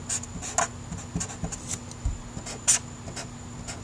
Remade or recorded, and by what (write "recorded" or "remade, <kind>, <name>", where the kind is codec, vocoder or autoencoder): recorded